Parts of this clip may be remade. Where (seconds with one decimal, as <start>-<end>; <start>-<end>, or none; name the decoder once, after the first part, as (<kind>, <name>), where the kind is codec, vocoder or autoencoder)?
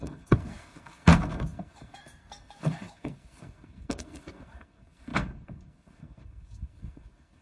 0.0-7.4 (codec, SNAC)